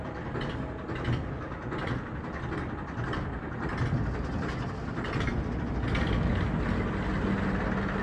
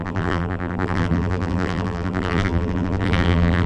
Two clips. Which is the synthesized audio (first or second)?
second